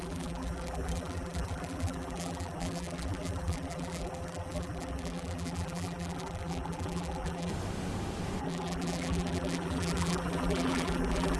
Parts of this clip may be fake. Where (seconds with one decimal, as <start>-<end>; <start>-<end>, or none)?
0.0-7.5; 8.4-11.4